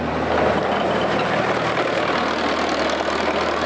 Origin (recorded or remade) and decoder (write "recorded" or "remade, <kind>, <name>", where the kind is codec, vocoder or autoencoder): recorded